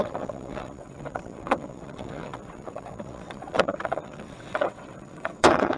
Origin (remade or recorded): remade